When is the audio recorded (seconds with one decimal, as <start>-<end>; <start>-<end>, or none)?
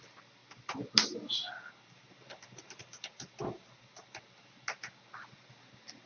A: 0.0-6.1